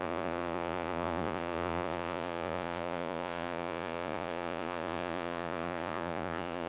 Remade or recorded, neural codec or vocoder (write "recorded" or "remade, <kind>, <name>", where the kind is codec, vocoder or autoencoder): remade, vocoder, Vocos